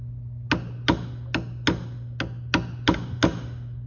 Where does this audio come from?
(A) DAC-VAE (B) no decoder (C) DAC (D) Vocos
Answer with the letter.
B